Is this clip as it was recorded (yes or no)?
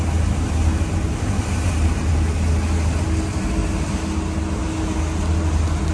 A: yes